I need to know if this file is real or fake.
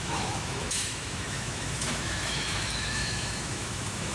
fake